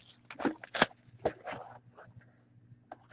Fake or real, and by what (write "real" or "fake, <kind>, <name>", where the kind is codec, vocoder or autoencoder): real